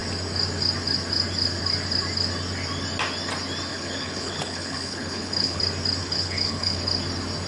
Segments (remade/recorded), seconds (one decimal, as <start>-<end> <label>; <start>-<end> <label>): 0.0-3.7 recorded; 3.7-5.6 remade; 5.6-6.0 recorded; 6.0-6.8 remade; 6.8-7.5 recorded